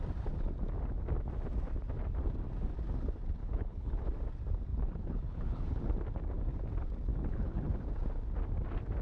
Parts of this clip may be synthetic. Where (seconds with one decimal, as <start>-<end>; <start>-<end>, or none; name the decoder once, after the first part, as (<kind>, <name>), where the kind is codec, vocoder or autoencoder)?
3.4-4.1 (codec, HILCodec); 4.7-5.8; 7.1-7.6

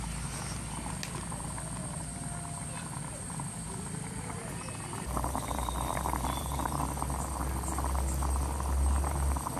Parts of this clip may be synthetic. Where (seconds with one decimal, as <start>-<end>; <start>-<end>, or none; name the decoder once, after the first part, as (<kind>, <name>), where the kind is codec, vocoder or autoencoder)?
4.9-6.8 (vocoder, BigVGAN v2)

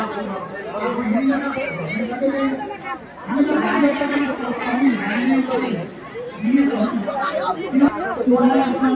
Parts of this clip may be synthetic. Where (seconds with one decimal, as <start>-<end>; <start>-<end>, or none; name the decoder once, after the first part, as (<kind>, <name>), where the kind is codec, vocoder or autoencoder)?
3.9-5.0 (vocoder, Vocos)

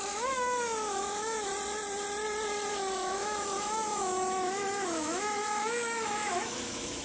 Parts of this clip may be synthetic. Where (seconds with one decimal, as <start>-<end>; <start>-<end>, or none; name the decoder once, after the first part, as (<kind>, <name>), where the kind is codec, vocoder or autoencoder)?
0.0-1.5 (autoencoder, DAC-VAE); 2.7-7.0

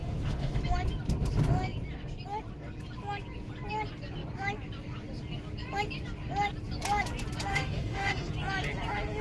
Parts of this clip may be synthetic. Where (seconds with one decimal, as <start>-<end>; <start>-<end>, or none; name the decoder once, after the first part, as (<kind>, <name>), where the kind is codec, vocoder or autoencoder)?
0.0-0.6 (autoencoder, DAC-VAE); 7.5-8.3

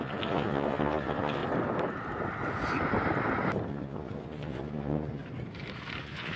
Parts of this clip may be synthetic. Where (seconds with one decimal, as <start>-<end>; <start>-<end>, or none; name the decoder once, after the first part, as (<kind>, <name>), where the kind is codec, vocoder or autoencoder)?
0.0-1.4 (vocoder, Vocos); 3.7-5.2; 6.0-6.4

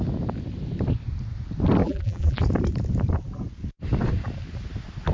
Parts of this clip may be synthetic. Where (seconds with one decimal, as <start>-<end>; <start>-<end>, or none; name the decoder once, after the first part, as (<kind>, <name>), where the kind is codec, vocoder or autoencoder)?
1.8-2.4 (vocoder, BigVGAN v2)